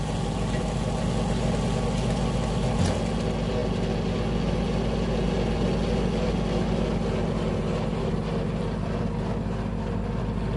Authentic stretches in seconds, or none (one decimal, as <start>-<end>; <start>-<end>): 0.0-10.6

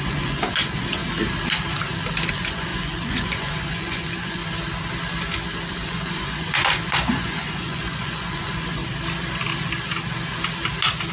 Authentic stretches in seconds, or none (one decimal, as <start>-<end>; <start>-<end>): 1.0-2.3; 4.4-5.7; 8.8-11.1

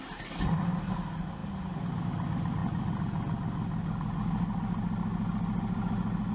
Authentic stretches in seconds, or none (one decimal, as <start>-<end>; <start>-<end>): 0.0-6.3

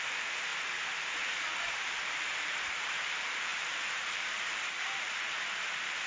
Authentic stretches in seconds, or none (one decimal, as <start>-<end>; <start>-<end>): 0.5-1.8

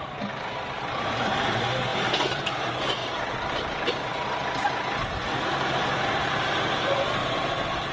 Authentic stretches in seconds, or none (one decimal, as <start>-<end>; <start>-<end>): 0.0-3.0; 4.3-5.8; 6.5-7.2